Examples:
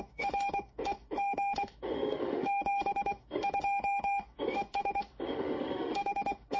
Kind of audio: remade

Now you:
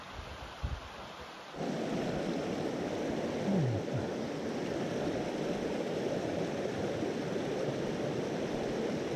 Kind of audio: recorded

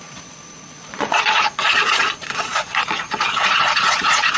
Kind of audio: remade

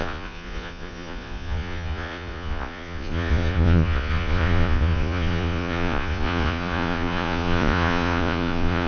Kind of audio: remade